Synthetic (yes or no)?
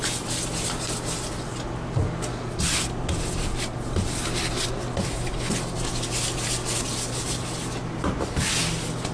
no